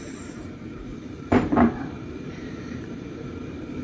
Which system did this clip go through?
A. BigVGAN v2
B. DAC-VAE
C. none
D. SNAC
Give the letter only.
A